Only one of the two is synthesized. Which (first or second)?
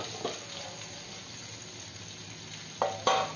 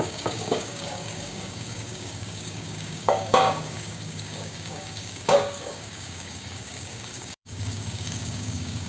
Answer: second